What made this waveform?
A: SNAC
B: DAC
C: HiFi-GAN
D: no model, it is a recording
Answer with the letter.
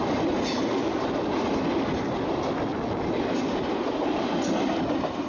D